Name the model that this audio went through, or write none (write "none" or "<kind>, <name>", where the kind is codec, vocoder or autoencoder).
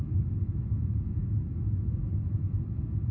vocoder, Vocos